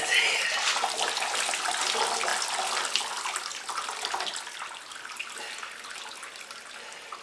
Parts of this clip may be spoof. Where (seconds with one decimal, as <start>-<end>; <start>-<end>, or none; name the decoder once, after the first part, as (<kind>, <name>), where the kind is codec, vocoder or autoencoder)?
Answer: none